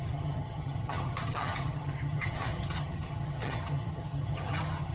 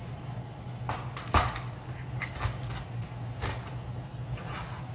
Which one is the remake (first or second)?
first